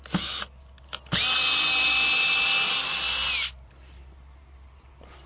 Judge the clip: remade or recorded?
recorded